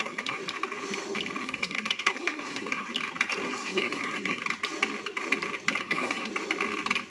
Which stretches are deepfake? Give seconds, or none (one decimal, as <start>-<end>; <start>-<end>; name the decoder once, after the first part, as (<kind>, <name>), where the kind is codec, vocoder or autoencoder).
0.0-0.4 (codec, SNAC); 1.4-2.9; 3.5-4.4; 5.8-6.3